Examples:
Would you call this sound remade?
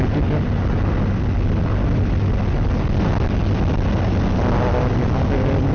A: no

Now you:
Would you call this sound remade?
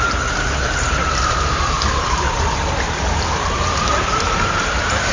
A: yes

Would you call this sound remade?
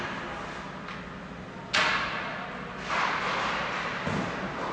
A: no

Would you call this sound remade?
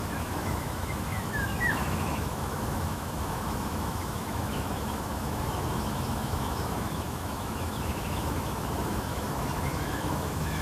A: yes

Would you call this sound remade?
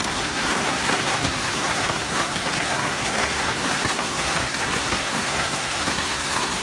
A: yes